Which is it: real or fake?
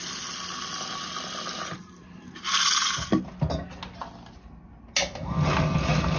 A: real